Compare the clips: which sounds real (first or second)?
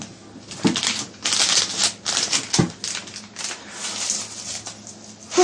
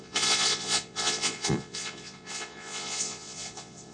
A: first